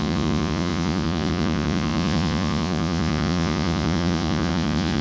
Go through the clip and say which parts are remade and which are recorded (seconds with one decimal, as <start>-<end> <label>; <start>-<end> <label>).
0.0-5.0 remade